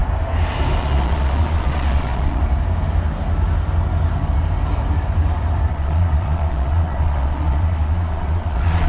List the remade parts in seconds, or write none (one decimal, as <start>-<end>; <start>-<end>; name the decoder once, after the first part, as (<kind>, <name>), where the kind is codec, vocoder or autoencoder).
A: 0.8-2.4 (vocoder, Vocos); 5.7-8.9